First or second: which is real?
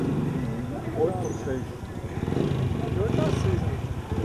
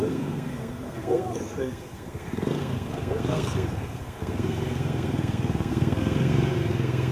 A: first